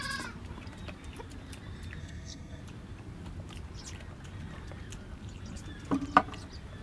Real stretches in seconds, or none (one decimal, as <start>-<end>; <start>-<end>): 0.0-2.0; 2.6-6.8